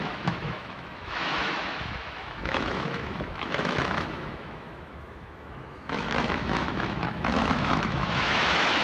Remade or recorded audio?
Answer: remade